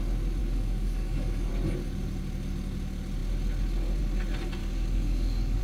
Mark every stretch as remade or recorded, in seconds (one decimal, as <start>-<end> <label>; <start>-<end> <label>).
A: 0.0-0.4 recorded; 0.4-1.5 remade; 1.5-4.6 recorded; 4.6-5.6 remade